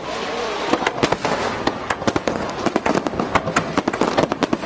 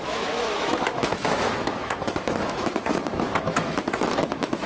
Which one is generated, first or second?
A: second